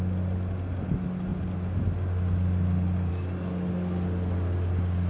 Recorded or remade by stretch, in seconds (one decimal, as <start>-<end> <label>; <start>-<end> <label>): 0.0-5.1 recorded